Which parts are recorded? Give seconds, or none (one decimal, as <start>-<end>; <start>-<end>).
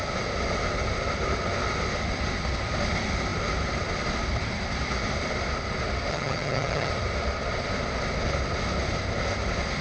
0.0-6.1; 6.9-9.8